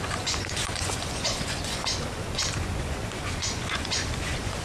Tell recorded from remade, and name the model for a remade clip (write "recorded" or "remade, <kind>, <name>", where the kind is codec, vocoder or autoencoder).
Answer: remade, vocoder, Vocos